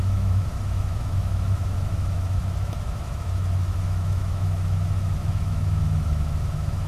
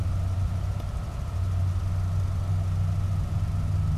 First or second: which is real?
second